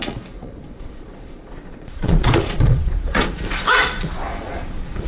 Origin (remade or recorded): remade